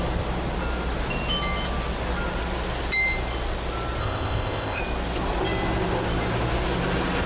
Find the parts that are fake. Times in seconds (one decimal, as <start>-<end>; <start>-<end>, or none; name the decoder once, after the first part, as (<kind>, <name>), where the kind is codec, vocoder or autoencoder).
4.0-4.8 (codec, ZipCodec)